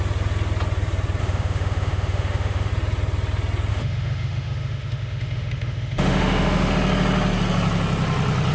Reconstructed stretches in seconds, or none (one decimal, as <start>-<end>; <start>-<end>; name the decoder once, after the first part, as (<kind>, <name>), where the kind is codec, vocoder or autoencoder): 1.2-2.7 (autoencoder, DAC-VAE); 3.7-6.7